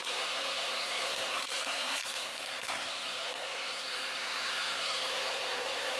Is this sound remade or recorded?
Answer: remade